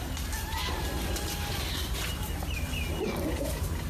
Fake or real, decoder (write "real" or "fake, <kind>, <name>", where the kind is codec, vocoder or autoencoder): real